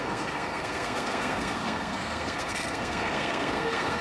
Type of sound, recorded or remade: remade